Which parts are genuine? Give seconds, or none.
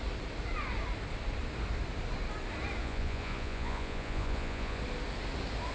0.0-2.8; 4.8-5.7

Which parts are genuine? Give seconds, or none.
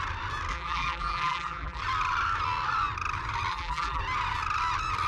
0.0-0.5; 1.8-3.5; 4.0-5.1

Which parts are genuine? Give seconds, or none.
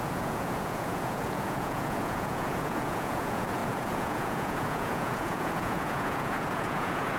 none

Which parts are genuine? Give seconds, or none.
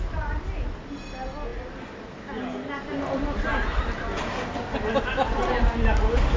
0.0-6.4